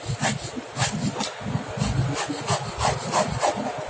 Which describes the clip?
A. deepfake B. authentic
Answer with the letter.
B